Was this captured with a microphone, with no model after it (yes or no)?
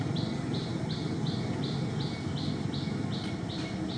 yes